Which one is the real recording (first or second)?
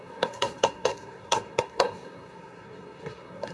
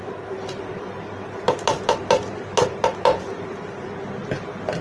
second